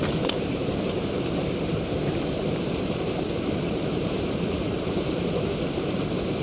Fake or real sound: fake